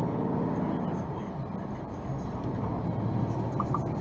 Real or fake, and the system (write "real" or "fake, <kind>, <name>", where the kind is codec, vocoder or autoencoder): real